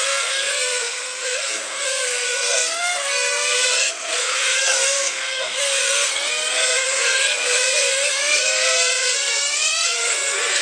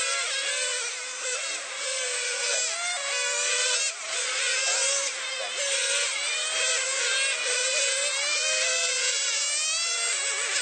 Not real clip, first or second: first